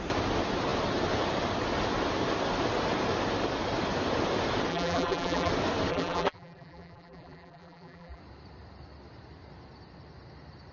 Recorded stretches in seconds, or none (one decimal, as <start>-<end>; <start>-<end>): 0.0-4.7; 5.5-5.9; 8.2-10.7